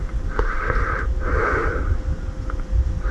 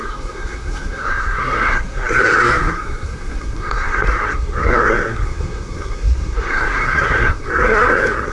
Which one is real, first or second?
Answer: first